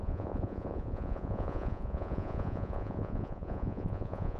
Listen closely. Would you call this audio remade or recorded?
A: remade